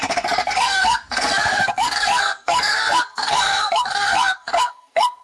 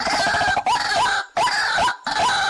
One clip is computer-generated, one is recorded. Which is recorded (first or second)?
second